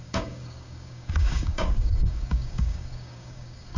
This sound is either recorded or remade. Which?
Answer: remade